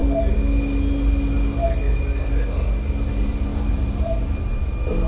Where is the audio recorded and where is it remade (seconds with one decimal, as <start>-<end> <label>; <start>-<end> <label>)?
0.0-3.0 recorded; 3.0-5.1 remade